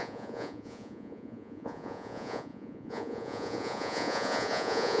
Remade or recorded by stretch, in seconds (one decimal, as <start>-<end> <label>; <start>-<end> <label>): 0.0-5.0 remade